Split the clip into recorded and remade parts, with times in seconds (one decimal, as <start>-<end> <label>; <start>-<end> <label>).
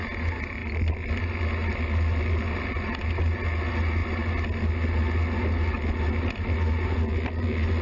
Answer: 0.0-7.8 recorded